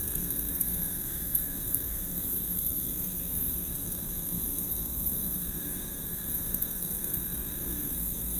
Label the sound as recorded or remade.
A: remade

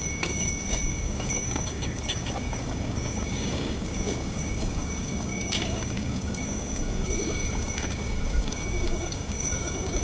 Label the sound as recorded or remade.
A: remade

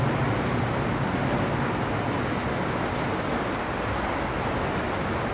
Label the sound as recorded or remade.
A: recorded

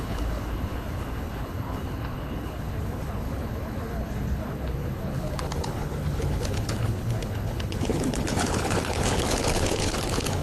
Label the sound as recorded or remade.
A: remade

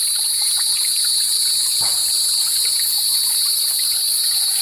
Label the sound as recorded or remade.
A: remade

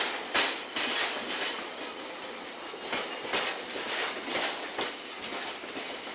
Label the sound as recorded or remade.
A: recorded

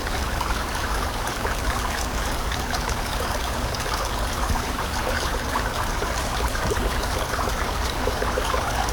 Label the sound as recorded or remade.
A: remade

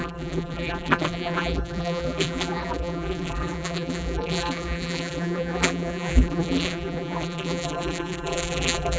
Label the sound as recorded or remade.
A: remade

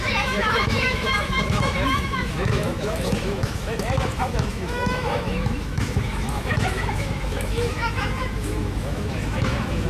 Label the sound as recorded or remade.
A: remade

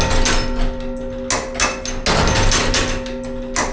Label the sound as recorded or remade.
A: recorded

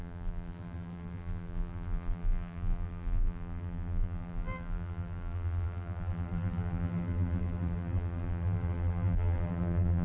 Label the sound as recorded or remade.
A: remade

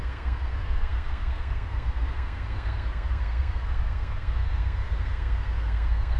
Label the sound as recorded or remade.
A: remade